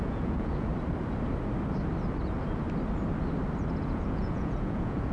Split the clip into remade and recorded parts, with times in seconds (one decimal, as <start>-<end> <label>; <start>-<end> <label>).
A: 0.0-0.7 remade; 0.7-3.8 recorded; 3.8-5.1 remade